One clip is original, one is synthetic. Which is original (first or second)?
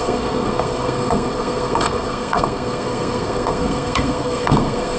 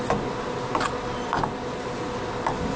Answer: second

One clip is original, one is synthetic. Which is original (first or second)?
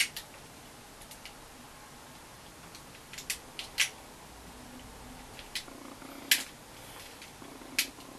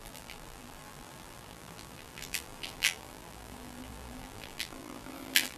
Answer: first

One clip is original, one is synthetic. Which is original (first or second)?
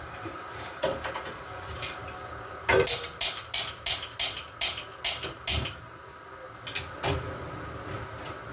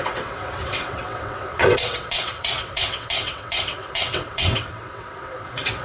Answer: first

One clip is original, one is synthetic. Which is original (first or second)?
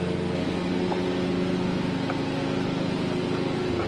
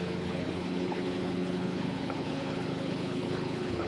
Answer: first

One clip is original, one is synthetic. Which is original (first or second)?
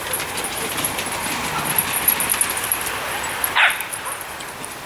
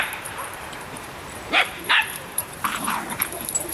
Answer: first